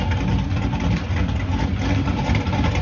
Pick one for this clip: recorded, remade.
remade